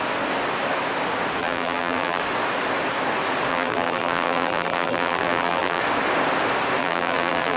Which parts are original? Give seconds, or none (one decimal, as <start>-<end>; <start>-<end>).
0.0-1.4; 2.2-3.5; 5.8-6.8